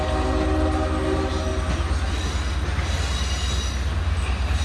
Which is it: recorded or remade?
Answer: recorded